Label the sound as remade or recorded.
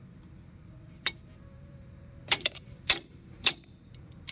remade